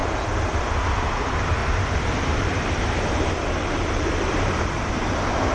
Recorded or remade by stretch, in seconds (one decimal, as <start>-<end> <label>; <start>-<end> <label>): 0.0-1.6 recorded; 1.6-4.9 remade; 4.9-5.5 recorded